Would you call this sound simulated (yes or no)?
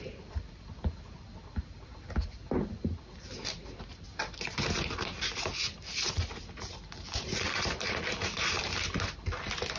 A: no